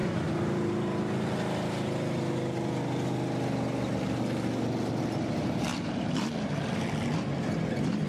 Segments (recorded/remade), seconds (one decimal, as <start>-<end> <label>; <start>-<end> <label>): 0.0-0.7 remade; 0.7-5.7 recorded; 5.7-6.6 remade; 6.6-8.1 recorded